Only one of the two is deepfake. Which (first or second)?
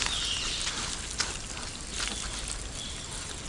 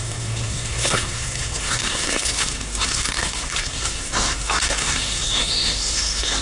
second